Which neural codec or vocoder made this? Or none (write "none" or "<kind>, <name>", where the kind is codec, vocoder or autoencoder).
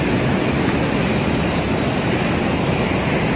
none